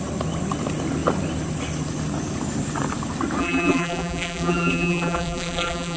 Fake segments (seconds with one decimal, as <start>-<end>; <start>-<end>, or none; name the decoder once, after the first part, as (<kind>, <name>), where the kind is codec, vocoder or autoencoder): 3.4-6.0 (vocoder, BigVGAN v2)